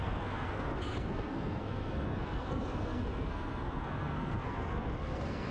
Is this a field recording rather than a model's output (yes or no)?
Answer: no